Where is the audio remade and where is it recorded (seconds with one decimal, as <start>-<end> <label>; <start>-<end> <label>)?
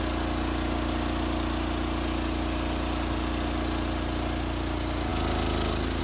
0.0-6.0 recorded